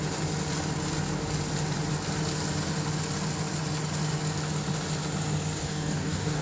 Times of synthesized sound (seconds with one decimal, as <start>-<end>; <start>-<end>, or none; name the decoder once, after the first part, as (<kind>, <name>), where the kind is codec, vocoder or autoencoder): 5.6-6.4 (codec, DAC)